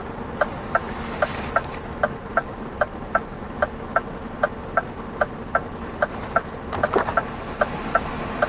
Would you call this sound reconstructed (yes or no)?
no